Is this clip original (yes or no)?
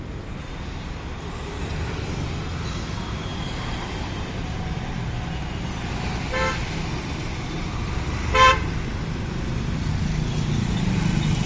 yes